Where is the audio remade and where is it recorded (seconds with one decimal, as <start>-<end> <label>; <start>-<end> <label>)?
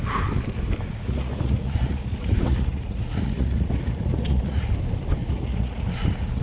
0.0-0.9 recorded; 0.9-4.7 remade; 4.7-5.2 recorded; 5.2-6.4 remade